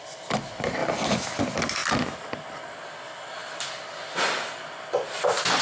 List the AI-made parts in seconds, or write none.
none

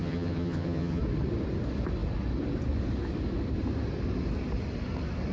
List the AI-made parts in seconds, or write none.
0.0-1.0 (vocoder, HiFi-GAN)

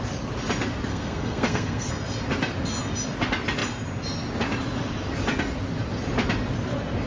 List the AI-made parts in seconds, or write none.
0.9-1.9 (codec, SNAC)

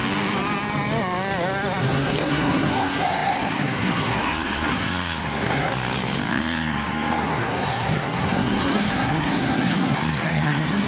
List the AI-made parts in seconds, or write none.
1.8-5.7 (codec, SNAC); 6.3-10.9

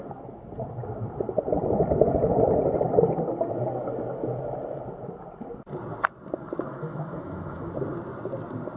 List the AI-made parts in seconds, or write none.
6.7-7.7 (autoencoder, DAC-VAE)

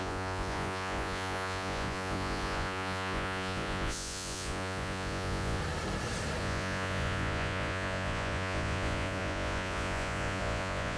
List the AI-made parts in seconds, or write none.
0.0-5.6 (vocoder, Vocos); 6.4-11.0

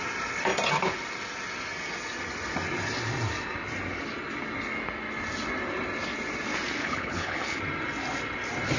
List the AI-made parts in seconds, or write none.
6.8-7.6 (codec, HILCodec)